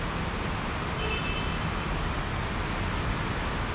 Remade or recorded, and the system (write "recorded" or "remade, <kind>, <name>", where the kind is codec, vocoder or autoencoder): recorded